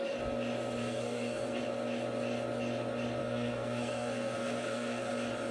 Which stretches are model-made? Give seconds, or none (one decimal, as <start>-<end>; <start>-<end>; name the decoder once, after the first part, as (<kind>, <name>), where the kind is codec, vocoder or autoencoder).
0.8-1.6 (codec, SNAC); 3.2-5.1